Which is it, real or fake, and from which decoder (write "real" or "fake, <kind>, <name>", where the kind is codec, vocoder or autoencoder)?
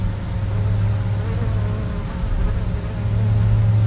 real